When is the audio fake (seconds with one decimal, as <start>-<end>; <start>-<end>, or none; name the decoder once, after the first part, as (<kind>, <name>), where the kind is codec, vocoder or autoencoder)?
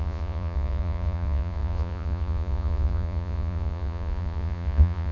0.0-5.1 (vocoder, Vocos)